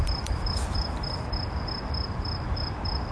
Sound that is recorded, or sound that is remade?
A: remade